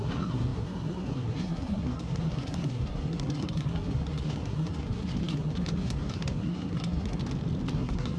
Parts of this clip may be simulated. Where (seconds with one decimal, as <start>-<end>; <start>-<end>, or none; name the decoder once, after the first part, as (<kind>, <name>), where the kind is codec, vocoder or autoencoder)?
0.0-7.2 (codec, SNAC); 7.7-8.2